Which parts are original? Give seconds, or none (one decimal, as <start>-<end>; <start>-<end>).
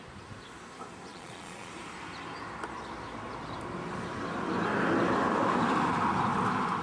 0.0-1.1; 1.7-6.8